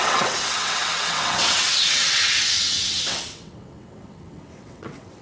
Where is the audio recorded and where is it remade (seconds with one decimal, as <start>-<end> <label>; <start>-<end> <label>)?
0.0-5.2 remade